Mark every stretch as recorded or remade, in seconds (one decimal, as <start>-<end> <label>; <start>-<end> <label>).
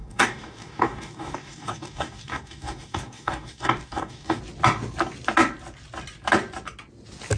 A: 0.0-4.4 remade; 4.4-7.4 recorded